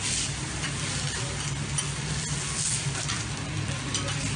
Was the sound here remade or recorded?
recorded